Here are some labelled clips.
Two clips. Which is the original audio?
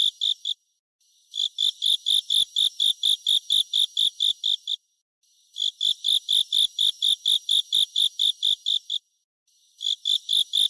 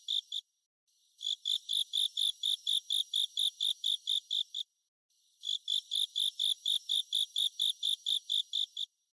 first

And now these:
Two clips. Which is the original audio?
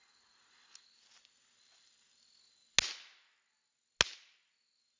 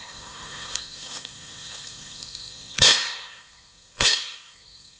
first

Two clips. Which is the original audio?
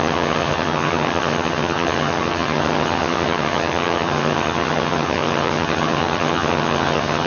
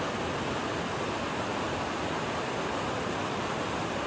second